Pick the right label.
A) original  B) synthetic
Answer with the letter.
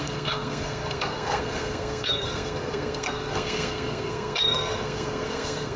B